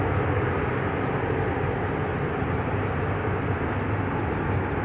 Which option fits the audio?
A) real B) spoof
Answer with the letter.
A